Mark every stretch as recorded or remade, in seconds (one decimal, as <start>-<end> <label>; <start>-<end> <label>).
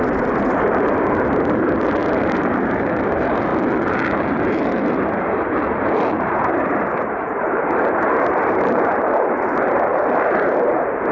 0.0-3.5 remade; 3.5-5.8 recorded; 5.8-11.1 remade